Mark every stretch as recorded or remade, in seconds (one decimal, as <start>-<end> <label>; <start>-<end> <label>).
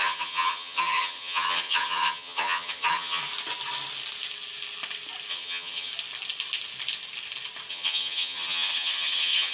0.0-3.2 remade; 3.2-5.3 recorded; 5.3-5.9 remade; 5.9-7.7 recorded; 7.7-9.5 remade